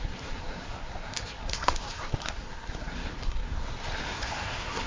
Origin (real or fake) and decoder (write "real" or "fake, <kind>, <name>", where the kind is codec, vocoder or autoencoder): fake, codec, SNAC